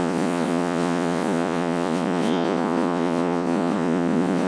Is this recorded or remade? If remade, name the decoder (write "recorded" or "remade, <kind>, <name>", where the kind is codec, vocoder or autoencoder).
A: remade, vocoder, Vocos